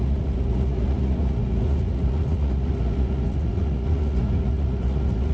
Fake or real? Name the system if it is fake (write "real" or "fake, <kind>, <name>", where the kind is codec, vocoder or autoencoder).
fake, vocoder, Vocos